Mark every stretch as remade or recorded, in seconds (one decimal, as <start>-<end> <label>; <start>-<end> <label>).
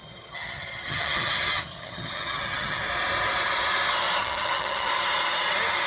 0.0-2.8 remade; 2.8-4.2 recorded; 4.2-4.9 remade; 4.9-5.9 recorded